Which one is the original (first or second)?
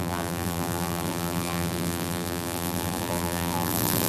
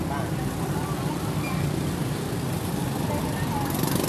second